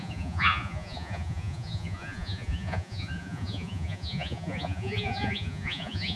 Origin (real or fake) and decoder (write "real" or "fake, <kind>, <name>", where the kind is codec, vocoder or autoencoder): fake, vocoder, Vocos